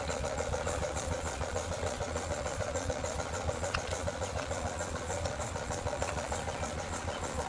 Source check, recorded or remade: remade